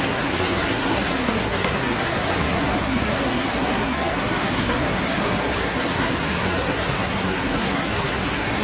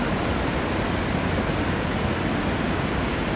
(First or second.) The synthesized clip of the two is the first